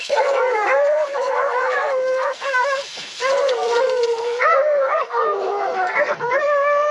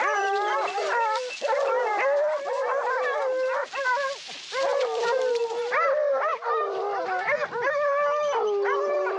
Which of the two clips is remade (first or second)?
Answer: first